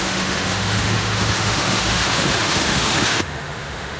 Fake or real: fake